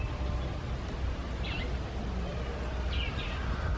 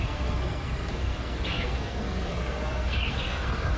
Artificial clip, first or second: second